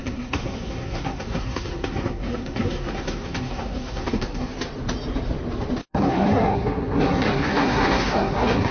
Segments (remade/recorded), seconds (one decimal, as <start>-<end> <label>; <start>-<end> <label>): 0.0-4.5 remade; 4.5-5.9 recorded; 5.9-8.7 remade